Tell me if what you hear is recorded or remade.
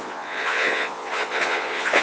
remade